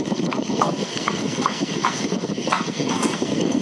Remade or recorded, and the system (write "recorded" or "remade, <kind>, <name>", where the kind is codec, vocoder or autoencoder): remade, codec, SNAC